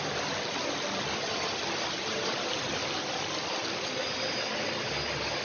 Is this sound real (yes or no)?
yes